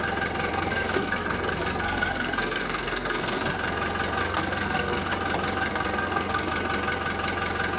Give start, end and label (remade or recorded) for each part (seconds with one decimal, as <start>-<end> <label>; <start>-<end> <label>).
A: 0.0-0.5 recorded; 0.5-3.4 remade; 3.4-4.2 recorded; 4.2-5.1 remade; 5.1-5.7 recorded; 5.7-6.5 remade; 6.5-7.8 recorded